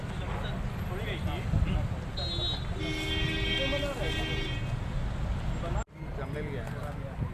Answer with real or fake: real